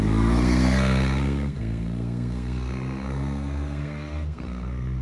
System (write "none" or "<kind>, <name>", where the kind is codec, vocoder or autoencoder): codec, SNAC